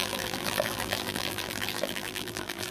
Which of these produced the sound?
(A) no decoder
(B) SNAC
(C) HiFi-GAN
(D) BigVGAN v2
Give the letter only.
D